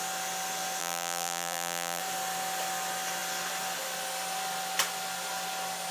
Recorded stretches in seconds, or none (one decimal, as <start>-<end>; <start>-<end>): 0.0-0.8; 2.0-5.9